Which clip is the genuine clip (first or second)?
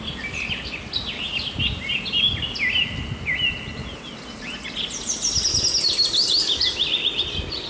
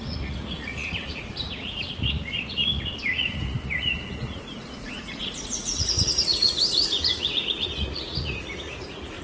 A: first